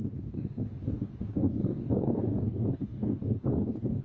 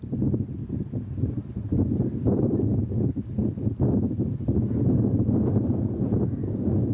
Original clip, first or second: second